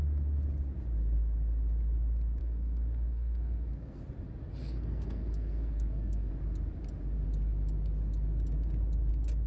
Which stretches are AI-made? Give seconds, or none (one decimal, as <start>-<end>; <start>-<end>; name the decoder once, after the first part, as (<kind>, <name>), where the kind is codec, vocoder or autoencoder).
2.4-4.0 (codec, SNAC); 4.6-6.3